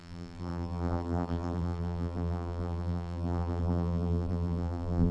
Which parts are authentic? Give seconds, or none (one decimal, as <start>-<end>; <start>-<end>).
none